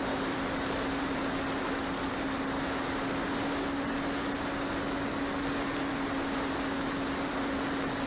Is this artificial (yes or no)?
no